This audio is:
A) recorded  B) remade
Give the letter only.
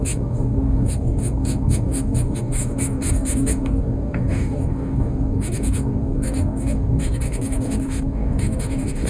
B